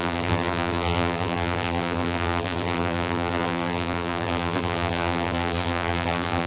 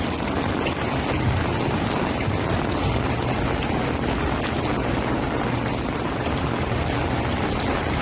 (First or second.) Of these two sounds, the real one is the second